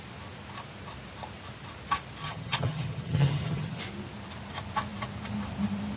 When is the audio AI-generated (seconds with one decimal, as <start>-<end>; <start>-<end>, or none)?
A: 2.2-3.8